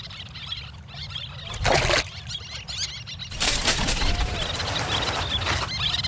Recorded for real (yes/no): yes